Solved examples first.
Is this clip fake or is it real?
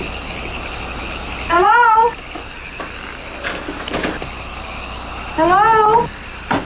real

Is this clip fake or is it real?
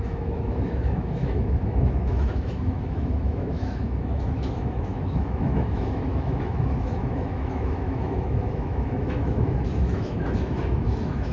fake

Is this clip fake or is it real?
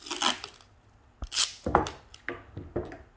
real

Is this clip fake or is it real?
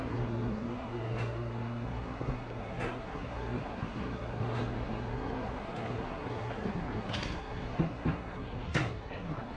fake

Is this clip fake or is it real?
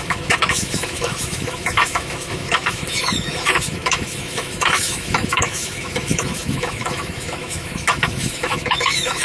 fake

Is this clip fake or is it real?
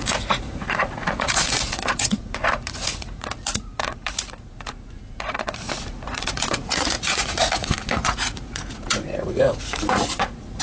fake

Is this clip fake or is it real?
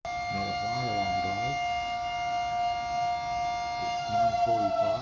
real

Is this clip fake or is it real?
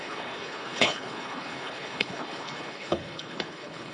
fake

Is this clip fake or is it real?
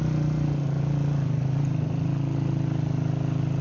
real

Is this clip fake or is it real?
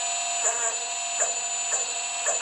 real